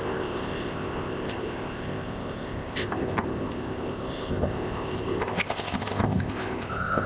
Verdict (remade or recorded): remade